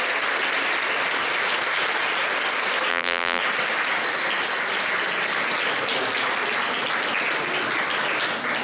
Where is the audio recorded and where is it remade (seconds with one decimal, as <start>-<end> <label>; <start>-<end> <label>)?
0.0-2.9 recorded; 2.9-3.4 remade; 3.4-8.6 recorded

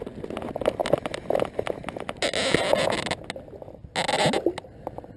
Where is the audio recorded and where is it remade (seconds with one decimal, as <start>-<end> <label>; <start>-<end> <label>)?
0.0-5.2 recorded

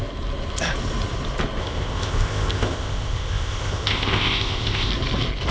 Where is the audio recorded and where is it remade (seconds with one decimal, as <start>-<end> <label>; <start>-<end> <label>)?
0.0-1.6 recorded; 1.6-4.9 remade; 4.9-5.5 recorded

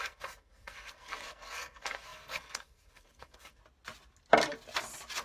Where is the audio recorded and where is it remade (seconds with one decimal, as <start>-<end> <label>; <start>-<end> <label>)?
0.0-3.6 remade; 3.6-5.2 recorded

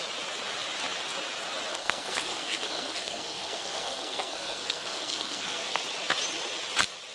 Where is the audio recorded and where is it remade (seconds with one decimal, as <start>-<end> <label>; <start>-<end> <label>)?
0.0-1.7 recorded; 1.7-5.8 remade; 5.8-7.1 recorded

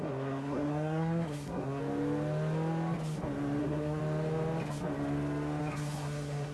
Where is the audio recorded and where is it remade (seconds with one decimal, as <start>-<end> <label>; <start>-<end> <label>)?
0.0-1.8 remade; 1.8-3.6 recorded; 3.6-4.0 remade; 4.0-5.6 recorded; 5.6-6.5 remade

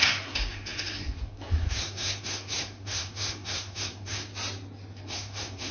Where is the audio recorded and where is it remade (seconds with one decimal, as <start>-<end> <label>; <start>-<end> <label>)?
0.0-4.3 remade; 4.3-5.0 recorded; 5.0-5.7 remade